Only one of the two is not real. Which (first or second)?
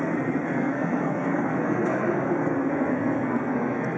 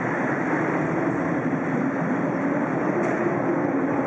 first